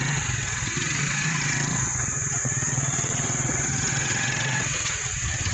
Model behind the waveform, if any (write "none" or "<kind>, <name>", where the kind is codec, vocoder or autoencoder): vocoder, WaveNeXt